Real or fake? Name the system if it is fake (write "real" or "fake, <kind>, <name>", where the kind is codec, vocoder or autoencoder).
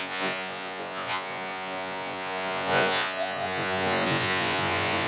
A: fake, vocoder, Vocos